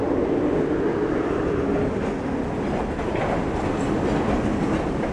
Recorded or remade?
recorded